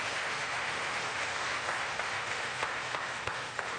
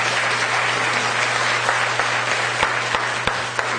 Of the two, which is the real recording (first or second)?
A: second